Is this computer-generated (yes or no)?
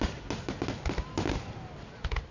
no